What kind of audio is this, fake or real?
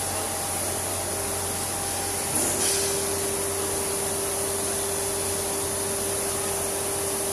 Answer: real